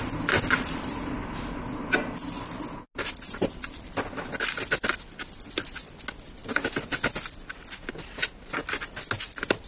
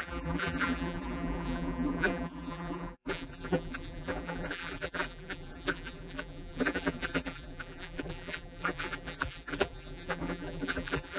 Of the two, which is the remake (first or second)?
second